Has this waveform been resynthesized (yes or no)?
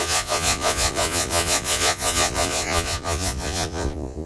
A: yes